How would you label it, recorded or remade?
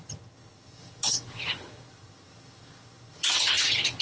remade